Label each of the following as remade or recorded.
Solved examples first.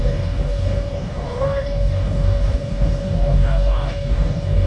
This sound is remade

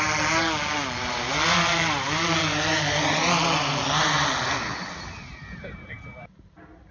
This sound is recorded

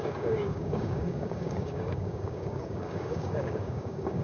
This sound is remade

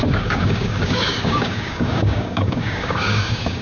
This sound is remade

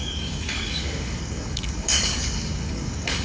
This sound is remade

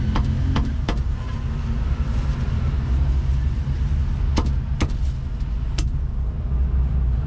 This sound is recorded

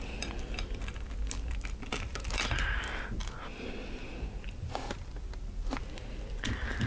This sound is recorded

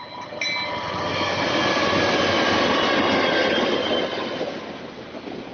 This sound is recorded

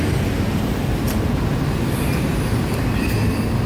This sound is recorded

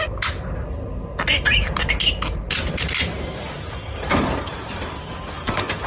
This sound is recorded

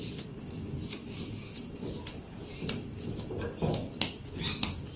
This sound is recorded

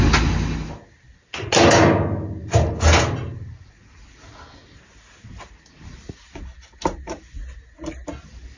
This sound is recorded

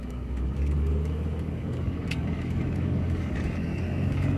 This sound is remade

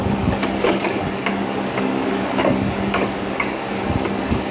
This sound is remade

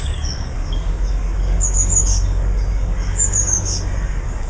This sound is remade